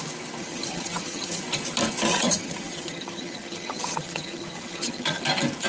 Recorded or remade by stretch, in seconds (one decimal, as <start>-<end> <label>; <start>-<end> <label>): 0.0-0.4 recorded; 0.4-1.4 remade; 1.4-2.1 recorded; 2.1-5.2 remade; 5.2-5.7 recorded